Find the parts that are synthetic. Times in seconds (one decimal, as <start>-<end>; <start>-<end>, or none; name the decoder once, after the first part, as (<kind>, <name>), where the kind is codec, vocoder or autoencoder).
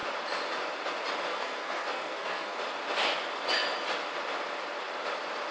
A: 1.3-2.6 (codec, SNAC)